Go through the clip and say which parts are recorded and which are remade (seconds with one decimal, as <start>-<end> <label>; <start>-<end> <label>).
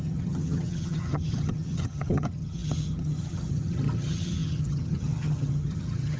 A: 0.0-6.2 remade